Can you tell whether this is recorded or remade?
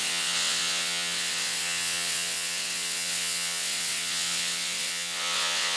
remade